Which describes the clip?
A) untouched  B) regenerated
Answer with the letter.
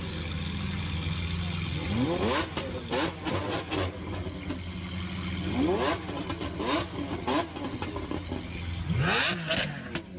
A